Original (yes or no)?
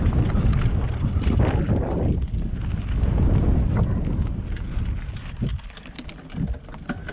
yes